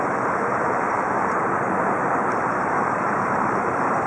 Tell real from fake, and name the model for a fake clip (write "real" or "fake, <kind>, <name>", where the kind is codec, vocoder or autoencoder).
fake, vocoder, BigVGAN v2